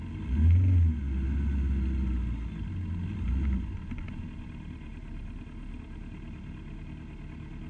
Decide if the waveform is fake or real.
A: real